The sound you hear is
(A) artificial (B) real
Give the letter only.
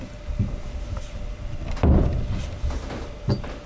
B